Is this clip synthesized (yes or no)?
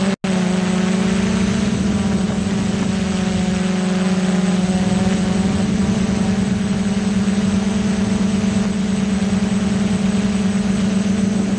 no